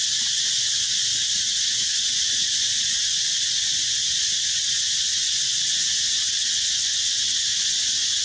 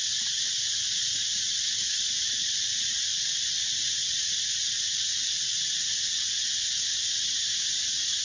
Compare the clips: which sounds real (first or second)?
second